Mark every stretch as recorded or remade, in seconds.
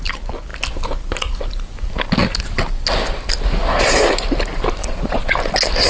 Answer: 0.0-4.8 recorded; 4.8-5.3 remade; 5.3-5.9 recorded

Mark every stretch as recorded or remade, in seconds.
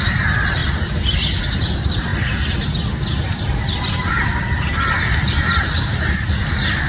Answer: 0.0-2.1 remade; 2.1-3.9 recorded; 3.9-6.9 remade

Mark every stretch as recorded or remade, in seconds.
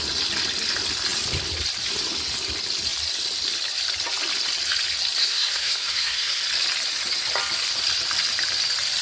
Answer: 0.0-5.2 recorded; 5.2-6.4 remade; 6.4-9.0 recorded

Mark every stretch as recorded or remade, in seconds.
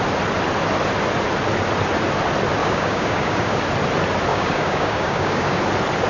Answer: 0.0-2.6 recorded; 2.6-3.6 remade; 3.6-4.3 recorded; 4.3-5.6 remade; 5.6-6.1 recorded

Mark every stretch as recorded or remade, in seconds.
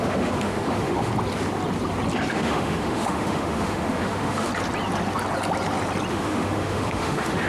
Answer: 0.0-1.1 remade; 1.1-2.3 recorded; 2.3-4.5 remade; 4.5-6.1 recorded; 6.1-7.5 remade